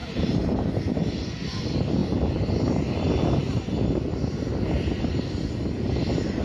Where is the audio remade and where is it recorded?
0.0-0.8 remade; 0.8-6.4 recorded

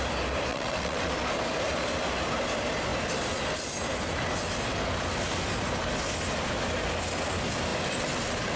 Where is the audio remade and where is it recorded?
0.0-0.5 recorded; 0.5-1.1 remade; 1.1-8.6 recorded

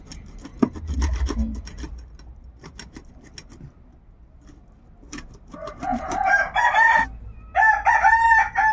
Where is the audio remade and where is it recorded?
0.0-5.9 recorded; 5.9-7.0 remade; 7.0-8.7 recorded

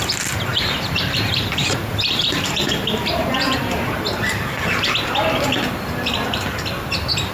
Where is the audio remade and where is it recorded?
0.0-0.5 recorded; 0.5-4.9 remade; 4.9-7.3 recorded